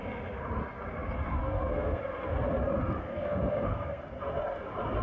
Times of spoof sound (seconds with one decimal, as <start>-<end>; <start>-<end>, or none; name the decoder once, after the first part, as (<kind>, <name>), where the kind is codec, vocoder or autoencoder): 1.4-2.0 (codec, SNAC); 3.1-4.0